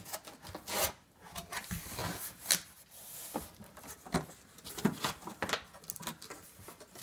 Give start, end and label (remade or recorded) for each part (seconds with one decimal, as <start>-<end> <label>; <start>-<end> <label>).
0.0-7.0 recorded